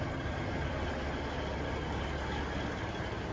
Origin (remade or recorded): recorded